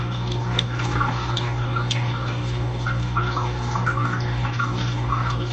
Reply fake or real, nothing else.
fake